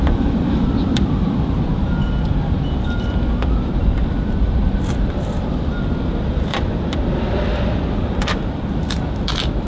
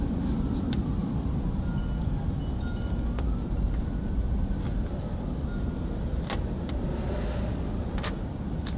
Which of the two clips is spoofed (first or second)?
first